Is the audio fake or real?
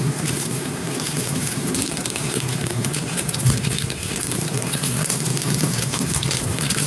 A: fake